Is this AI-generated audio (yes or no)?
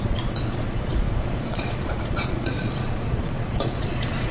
yes